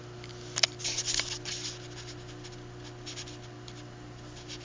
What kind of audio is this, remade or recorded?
recorded